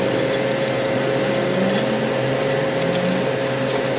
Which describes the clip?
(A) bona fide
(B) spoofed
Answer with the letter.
A